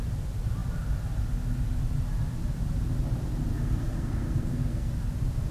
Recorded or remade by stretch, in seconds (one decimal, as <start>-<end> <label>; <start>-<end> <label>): 0.0-3.5 recorded; 3.5-4.9 remade; 4.9-5.5 recorded